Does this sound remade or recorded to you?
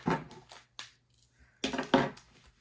recorded